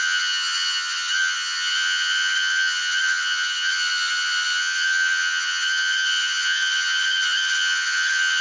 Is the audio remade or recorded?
remade